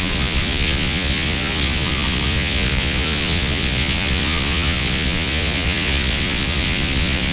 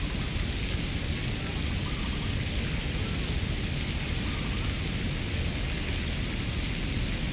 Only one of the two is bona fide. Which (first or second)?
second